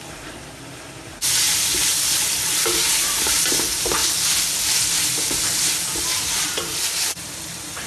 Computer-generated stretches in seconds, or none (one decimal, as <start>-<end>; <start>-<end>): 0.0-4.0; 6.1-7.9